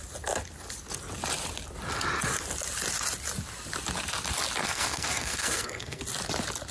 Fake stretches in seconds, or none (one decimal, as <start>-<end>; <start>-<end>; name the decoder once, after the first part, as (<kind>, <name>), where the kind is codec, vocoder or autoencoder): 4.6-6.0 (codec, SNAC)